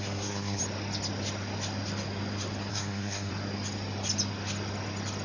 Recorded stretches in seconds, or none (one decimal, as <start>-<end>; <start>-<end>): 0.6-2.7; 3.3-5.2